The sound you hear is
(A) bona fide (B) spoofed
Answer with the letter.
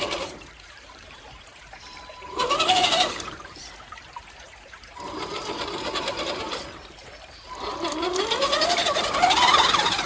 B